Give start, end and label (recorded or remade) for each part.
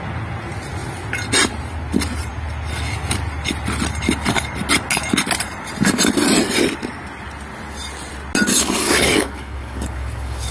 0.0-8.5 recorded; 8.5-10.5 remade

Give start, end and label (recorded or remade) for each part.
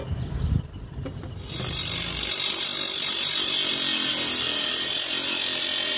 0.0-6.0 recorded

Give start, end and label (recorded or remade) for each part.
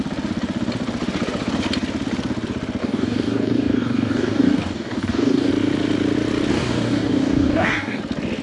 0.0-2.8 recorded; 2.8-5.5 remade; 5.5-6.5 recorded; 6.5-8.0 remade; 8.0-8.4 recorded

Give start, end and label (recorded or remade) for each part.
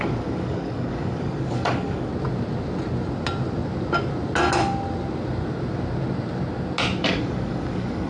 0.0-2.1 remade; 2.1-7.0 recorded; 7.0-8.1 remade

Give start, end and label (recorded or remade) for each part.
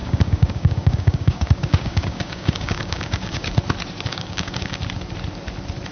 0.0-3.5 remade; 3.5-4.1 recorded; 4.1-4.8 remade; 4.8-5.9 recorded